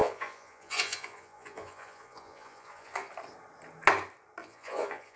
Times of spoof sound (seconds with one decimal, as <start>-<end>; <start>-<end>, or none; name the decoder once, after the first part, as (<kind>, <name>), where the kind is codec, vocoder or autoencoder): 0.0-3.1 (vocoder, Vocos); 4.4-5.2